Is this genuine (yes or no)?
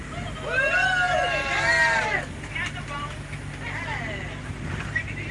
yes